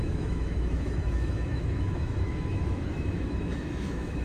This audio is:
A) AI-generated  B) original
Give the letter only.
A